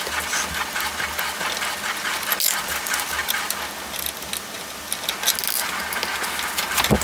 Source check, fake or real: real